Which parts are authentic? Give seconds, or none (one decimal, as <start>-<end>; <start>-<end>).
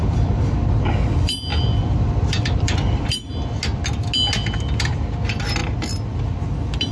0.0-1.5; 3.2-6.9